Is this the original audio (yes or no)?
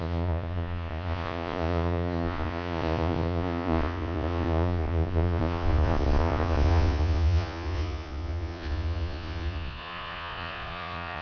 no